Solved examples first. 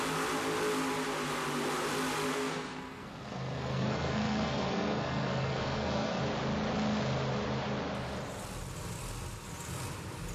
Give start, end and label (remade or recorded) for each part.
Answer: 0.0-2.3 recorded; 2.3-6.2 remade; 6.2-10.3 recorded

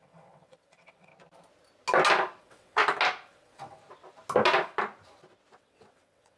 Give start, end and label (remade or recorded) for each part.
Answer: 0.0-1.1 remade; 1.1-2.4 recorded; 2.4-2.8 remade; 2.8-3.3 recorded; 3.3-3.8 remade; 3.8-5.6 recorded; 5.6-6.4 remade